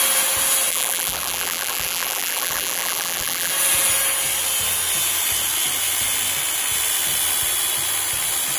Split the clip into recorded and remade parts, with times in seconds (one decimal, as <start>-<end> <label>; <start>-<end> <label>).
0.0-0.7 recorded; 0.7-3.5 remade; 3.5-8.6 recorded